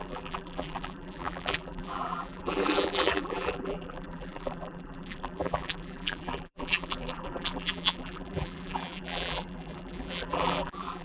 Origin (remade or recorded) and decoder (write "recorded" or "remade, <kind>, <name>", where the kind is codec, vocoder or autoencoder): remade, vocoder, BigVGAN v2